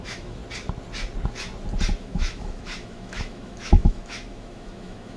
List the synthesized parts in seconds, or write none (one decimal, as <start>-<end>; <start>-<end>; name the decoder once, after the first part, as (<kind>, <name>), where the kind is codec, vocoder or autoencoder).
0.0-0.4 (autoencoder, DAC-VAE); 2.0-5.2